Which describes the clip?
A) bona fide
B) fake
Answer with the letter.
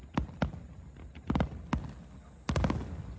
A